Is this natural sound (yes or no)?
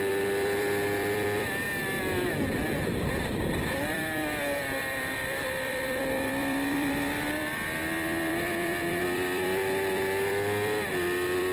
no